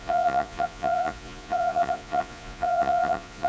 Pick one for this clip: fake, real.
fake